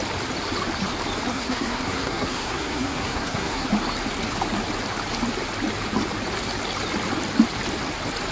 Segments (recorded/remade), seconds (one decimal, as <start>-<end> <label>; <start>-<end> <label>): 0.0-1.3 recorded; 1.3-3.7 remade; 3.7-8.3 recorded